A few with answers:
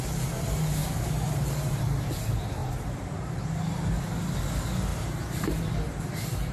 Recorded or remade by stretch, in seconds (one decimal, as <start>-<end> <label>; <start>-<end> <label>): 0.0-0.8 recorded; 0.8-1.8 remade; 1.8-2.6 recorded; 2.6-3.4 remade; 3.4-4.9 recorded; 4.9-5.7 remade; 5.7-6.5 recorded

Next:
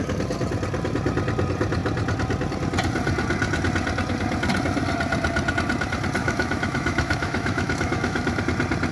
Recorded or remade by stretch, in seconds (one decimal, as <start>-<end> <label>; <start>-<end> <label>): 0.0-6.2 recorded; 6.2-8.4 remade; 8.4-8.9 recorded

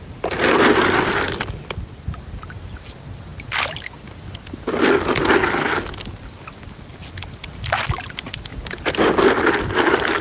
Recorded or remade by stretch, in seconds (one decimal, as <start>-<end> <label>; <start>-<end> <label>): 0.0-1.9 recorded; 1.9-2.5 remade; 2.5-8.5 recorded; 8.5-9.1 remade; 9.1-10.2 recorded

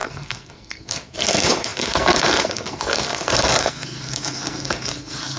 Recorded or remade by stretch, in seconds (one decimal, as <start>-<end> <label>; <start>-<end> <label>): 0.0-5.4 remade

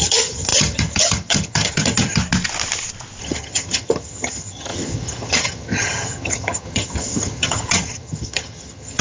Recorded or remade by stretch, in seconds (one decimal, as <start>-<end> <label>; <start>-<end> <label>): 0.0-2.2 remade; 2.2-3.2 recorded; 3.2-9.0 remade